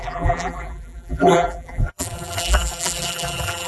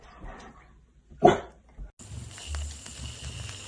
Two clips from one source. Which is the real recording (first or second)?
second